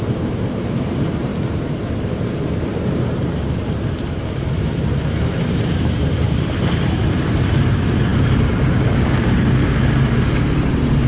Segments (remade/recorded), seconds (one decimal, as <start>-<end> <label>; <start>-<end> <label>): 0.0-11.1 remade